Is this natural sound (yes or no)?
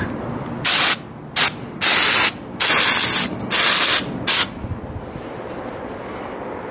yes